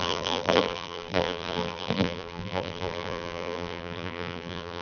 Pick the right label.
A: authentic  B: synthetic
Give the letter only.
B